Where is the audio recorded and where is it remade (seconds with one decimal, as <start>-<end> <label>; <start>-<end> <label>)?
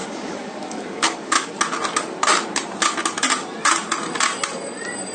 0.0-1.5 remade; 1.5-5.1 recorded